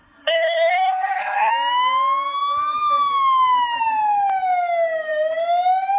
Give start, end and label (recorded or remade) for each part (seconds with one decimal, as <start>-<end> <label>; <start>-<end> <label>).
0.0-1.5 remade; 1.5-6.0 recorded